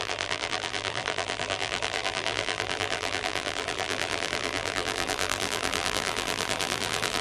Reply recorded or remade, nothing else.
remade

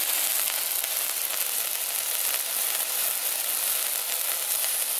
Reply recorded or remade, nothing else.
recorded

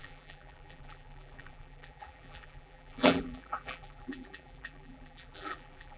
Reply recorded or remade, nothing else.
remade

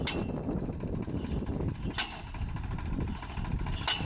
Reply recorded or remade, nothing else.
recorded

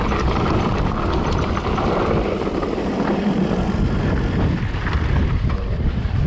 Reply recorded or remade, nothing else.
remade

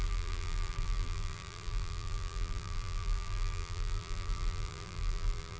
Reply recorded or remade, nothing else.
remade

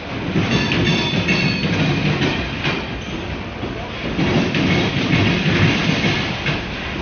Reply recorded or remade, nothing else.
remade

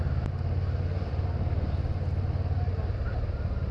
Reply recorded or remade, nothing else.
recorded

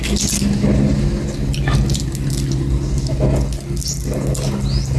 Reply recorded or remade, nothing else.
recorded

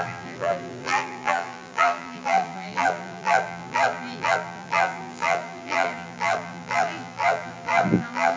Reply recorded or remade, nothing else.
remade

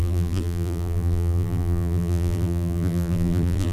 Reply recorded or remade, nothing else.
remade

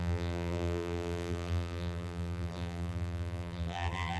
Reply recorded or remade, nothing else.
remade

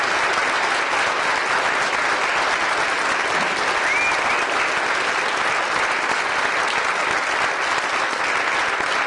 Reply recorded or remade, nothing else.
recorded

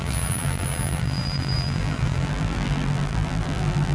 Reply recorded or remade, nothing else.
remade